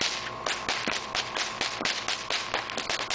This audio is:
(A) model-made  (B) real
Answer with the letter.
B